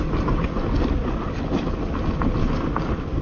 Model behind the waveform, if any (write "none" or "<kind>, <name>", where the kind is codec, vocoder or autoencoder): none